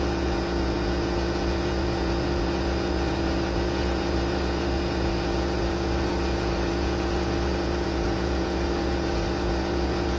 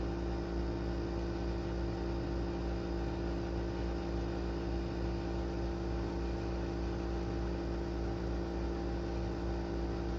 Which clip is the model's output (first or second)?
first